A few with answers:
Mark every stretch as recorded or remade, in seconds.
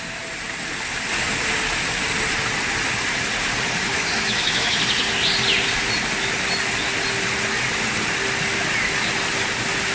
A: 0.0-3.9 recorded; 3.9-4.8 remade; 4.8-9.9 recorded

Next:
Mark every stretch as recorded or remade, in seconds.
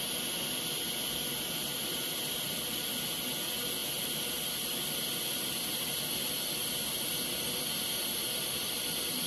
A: 0.0-9.3 recorded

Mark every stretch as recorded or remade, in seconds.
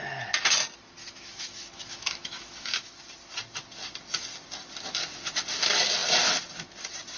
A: 0.0-1.0 recorded; 1.0-3.0 remade; 3.0-7.2 recorded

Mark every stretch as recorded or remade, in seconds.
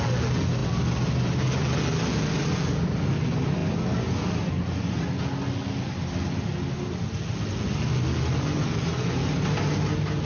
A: 0.0-10.3 recorded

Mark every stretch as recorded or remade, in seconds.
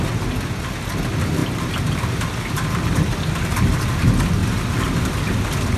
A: 0.0-5.8 recorded